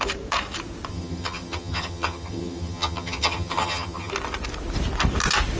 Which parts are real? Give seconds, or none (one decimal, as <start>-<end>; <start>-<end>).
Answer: 0.0-0.9; 4.1-5.6